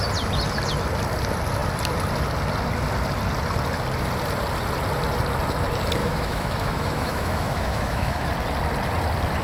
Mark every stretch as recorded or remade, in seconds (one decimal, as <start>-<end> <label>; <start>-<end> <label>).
0.0-6.0 recorded; 6.0-8.3 remade; 8.3-9.4 recorded